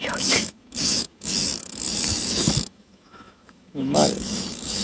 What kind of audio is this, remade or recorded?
remade